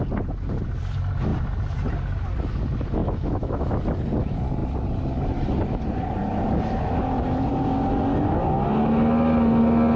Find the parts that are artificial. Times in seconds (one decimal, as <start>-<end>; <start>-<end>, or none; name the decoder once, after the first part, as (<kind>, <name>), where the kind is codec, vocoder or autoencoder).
3.0-3.7 (autoencoder, DAC-VAE)